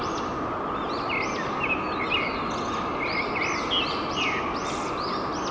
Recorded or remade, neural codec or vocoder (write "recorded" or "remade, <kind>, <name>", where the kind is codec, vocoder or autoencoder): recorded